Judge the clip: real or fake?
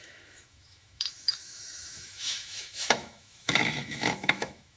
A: fake